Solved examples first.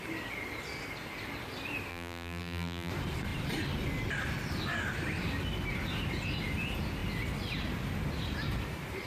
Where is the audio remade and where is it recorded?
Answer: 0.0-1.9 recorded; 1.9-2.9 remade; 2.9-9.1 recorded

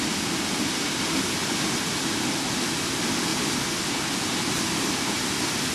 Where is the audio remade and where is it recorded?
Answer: 0.0-3.3 remade; 3.3-4.5 recorded; 4.5-5.7 remade